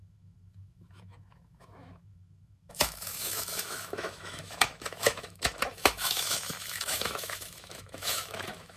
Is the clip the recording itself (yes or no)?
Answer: no